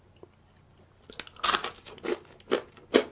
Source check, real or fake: real